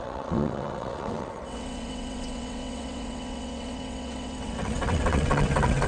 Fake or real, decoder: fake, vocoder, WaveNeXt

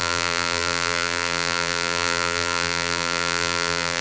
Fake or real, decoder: fake, vocoder, BigVGAN v2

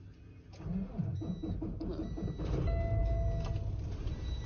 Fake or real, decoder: real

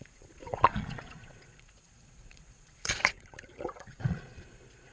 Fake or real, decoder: fake, vocoder, Vocos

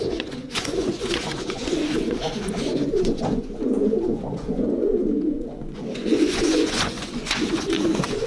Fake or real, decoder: fake, vocoder, Vocos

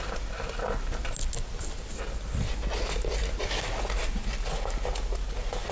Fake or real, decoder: real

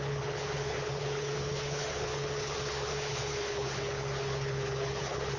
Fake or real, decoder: fake, codec, HILCodec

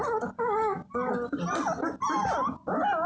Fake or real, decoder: real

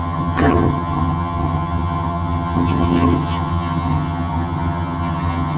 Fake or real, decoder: fake, vocoder, HiFi-GAN